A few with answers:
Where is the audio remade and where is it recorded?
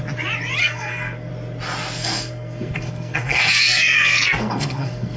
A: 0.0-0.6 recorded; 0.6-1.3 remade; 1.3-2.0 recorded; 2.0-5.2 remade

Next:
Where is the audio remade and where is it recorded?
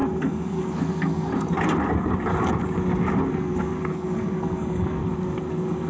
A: 0.0-1.3 remade; 1.3-3.3 recorded; 3.3-5.0 remade; 5.0-5.5 recorded; 5.5-5.9 remade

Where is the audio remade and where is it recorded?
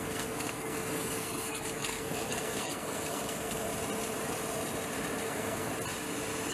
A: 0.0-3.7 remade; 3.7-5.2 recorded; 5.2-5.7 remade; 5.7-6.5 recorded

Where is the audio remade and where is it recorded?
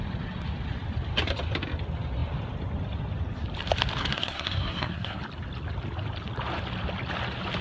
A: 0.0-4.0 recorded; 4.0-5.2 remade; 5.2-7.6 recorded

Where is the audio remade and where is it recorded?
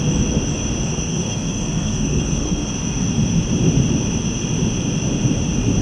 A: 0.0-0.9 recorded; 0.9-2.7 remade; 2.7-5.8 recorded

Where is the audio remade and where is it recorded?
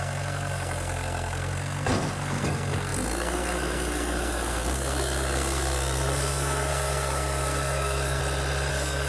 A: 0.0-8.2 remade; 8.2-8.7 recorded; 8.7-9.1 remade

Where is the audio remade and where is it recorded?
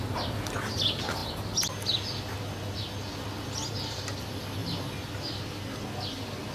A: 0.0-6.5 recorded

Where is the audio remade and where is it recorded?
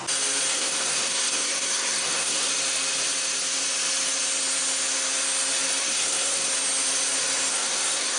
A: 0.0-0.5 recorded; 0.5-2.5 remade; 2.5-5.8 recorded; 5.8-6.5 remade; 6.5-7.5 recorded; 7.5-8.2 remade